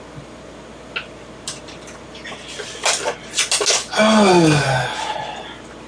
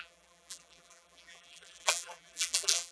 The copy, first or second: second